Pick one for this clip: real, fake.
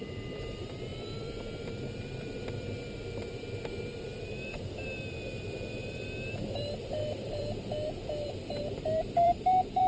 fake